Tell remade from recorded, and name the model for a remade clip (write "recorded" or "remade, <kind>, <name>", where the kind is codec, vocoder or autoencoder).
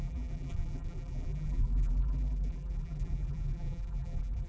remade, vocoder, BigVGAN v2